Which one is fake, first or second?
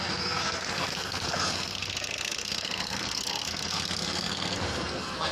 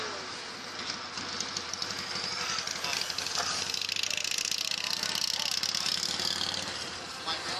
first